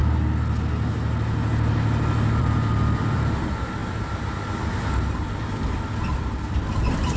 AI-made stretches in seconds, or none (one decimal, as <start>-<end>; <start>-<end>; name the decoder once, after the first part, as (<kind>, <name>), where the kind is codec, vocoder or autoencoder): 2.4-3.8 (vocoder, BigVGAN v2); 5.4-7.2